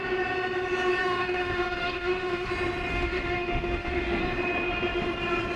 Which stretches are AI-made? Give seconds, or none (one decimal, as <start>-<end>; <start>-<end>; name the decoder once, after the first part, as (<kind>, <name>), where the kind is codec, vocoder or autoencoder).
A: 1.0-2.5 (autoencoder, DAC-VAE); 2.9-4.2